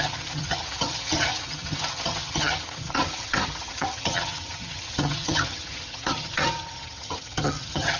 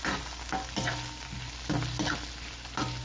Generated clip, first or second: first